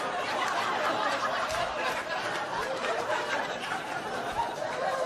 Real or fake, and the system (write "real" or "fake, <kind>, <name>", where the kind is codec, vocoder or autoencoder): fake, vocoder, BigVGAN v2